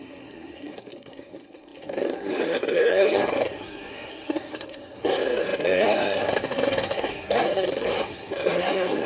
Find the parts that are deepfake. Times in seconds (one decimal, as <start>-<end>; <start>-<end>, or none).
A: 0.0-9.1